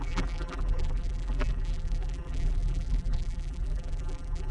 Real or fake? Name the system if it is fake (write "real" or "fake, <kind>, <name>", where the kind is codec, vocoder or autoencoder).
fake, vocoder, BigVGAN v2